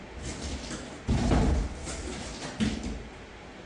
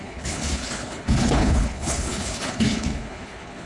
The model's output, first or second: second